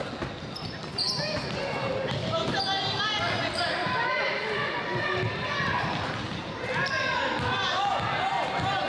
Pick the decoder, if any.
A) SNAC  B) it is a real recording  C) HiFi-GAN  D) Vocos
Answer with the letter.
B